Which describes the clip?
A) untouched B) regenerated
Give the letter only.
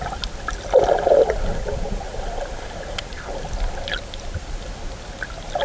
A